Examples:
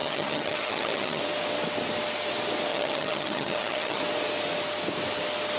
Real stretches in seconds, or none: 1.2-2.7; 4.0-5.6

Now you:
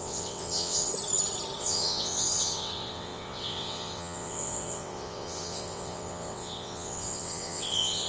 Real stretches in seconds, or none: 0.9-1.6